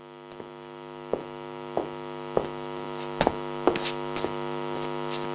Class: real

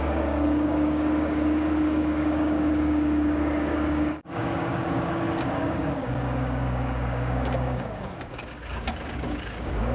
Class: fake